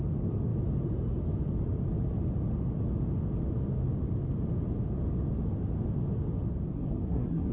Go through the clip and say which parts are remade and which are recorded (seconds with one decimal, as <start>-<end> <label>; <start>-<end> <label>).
0.0-6.7 recorded; 6.7-7.5 remade